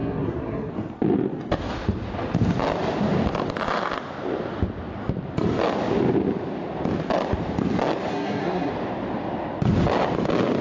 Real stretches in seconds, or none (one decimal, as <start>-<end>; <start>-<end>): 0.7-8.1; 8.7-10.6